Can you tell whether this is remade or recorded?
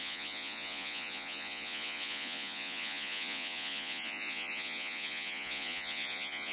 remade